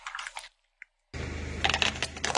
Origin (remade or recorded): recorded